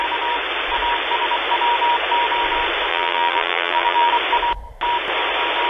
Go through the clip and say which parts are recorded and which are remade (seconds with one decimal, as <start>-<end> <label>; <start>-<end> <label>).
0.0-2.9 recorded; 2.9-4.1 remade; 4.1-5.7 recorded